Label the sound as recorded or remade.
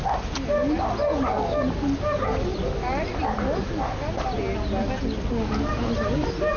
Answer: recorded